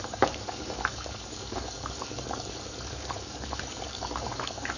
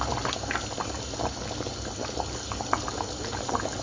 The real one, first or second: second